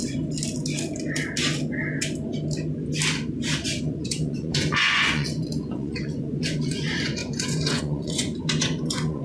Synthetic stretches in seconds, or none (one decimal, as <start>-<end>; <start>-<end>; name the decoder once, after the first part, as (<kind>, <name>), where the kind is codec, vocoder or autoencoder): 3.8-9.2 (vocoder, Vocos)